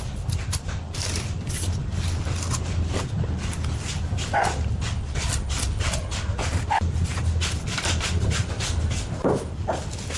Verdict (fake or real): real